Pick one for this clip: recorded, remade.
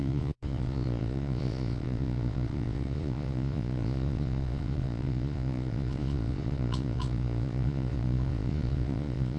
remade